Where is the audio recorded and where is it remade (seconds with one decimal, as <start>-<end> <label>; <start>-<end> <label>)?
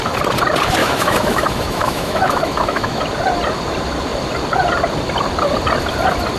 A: 0.0-0.8 recorded; 0.8-3.0 remade; 3.0-6.4 recorded